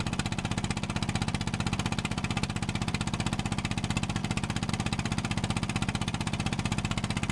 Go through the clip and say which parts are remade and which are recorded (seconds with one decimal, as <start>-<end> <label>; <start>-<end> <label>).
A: 0.0-7.3 remade